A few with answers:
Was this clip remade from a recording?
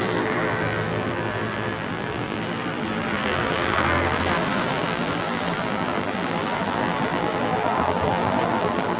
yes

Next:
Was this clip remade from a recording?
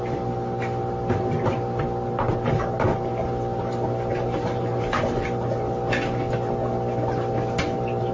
no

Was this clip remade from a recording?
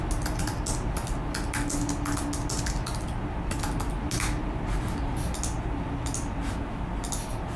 no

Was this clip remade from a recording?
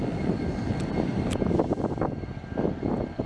no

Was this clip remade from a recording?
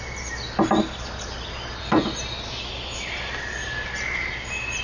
no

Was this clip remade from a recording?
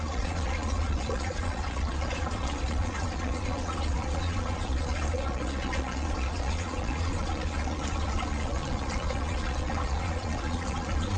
yes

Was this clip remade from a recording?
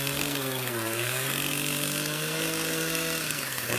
yes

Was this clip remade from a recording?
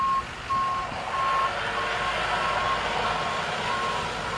no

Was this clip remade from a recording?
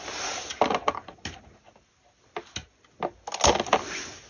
no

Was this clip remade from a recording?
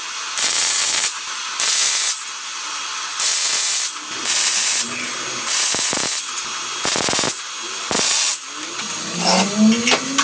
no